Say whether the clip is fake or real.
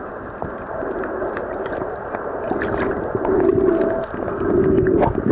real